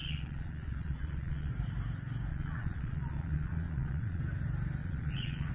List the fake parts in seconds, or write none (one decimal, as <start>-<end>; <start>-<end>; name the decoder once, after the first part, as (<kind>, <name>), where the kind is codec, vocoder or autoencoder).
0.0-1.5 (vocoder, Vocos); 2.3-4.2; 4.8-5.5